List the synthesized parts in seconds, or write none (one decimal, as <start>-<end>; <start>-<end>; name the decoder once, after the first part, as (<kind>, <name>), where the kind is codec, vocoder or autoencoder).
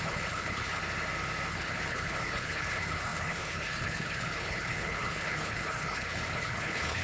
0.0-0.8 (codec, HILCodec); 1.5-7.0